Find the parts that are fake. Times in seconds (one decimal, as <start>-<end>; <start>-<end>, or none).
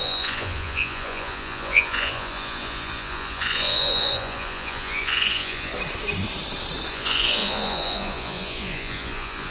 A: 0.0-5.7; 6.9-9.5